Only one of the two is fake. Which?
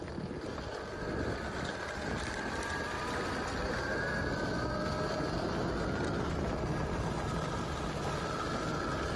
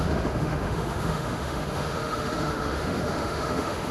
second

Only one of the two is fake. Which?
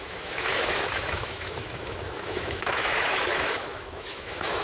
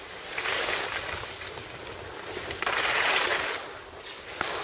first